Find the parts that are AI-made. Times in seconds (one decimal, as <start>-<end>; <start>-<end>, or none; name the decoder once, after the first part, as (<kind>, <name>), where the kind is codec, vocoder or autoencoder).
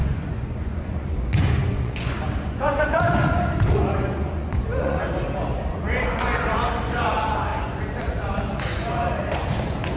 0.0-5.0 (vocoder, Vocos); 5.7-10.0